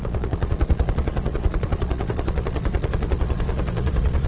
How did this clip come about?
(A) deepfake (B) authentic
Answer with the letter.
A